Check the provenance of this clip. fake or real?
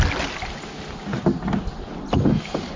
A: real